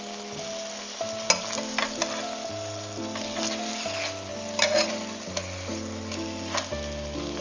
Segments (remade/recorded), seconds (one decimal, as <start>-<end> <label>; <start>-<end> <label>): 0.0-7.4 recorded